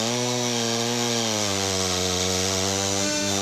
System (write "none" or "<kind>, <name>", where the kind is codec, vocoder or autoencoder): autoencoder, DAC-VAE